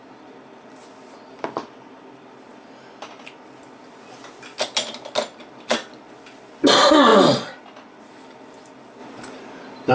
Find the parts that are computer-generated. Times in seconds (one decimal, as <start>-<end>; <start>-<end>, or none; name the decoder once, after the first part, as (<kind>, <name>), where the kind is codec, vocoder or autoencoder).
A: none